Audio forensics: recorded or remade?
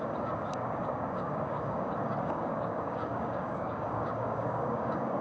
remade